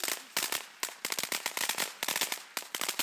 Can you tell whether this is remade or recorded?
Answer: recorded